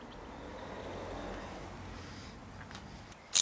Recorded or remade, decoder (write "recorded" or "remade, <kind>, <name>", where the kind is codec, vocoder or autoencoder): recorded